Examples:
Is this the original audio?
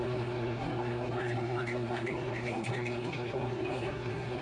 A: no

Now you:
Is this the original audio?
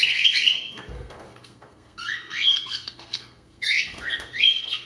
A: no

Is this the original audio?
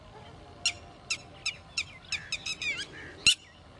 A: yes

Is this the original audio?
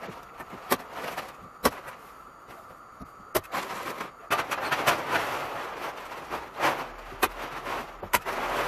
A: yes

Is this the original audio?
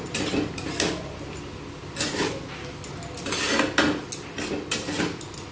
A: yes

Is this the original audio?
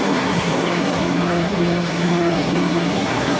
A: no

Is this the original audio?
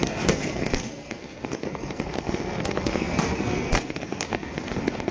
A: no